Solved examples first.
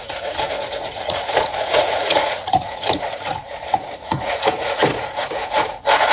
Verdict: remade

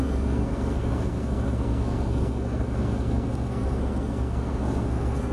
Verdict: remade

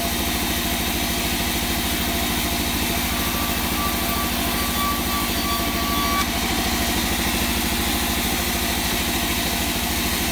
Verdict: recorded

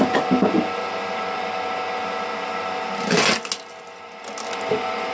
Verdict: recorded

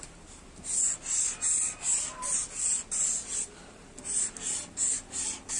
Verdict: recorded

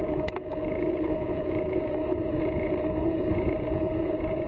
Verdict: remade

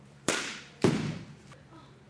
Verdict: remade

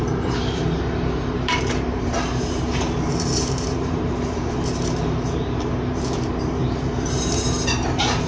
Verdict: remade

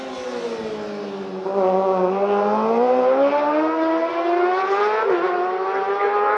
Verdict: recorded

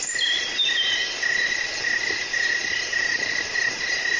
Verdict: recorded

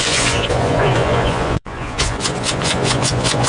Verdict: remade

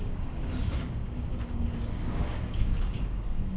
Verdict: remade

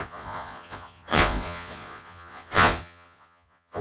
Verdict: remade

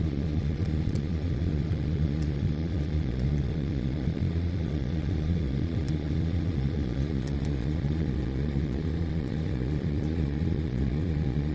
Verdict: remade